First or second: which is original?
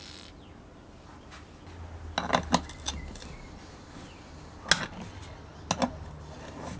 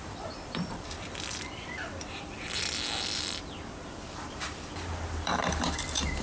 first